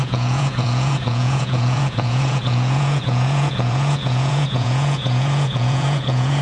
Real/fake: fake